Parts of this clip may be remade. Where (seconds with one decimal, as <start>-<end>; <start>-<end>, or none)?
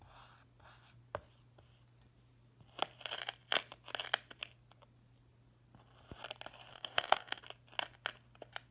6.7-7.4